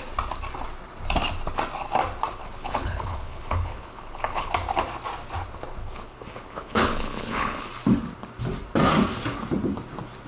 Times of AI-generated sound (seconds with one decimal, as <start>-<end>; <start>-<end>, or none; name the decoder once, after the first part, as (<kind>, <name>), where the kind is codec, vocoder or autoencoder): 2.4-4.5 (codec, HILCodec); 5.8-7.7